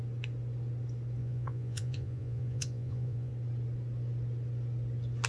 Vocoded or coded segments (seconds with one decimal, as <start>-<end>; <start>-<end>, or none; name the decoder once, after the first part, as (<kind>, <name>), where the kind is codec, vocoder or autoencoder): 1.2-3.3 (vocoder, Vocos)

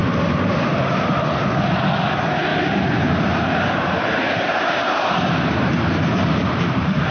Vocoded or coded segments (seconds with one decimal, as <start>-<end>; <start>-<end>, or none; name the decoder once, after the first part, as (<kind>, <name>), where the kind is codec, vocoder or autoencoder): 0.0-0.9 (vocoder, BigVGAN v2); 2.5-7.1

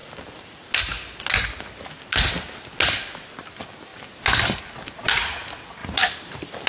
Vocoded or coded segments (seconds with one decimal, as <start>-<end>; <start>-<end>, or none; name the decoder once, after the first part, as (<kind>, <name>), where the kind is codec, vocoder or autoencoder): none